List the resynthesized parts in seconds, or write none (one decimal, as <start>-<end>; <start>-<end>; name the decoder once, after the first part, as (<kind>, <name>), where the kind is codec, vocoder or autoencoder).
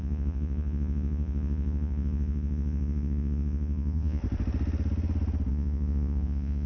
0.0-4.2 (vocoder, Vocos); 5.5-6.7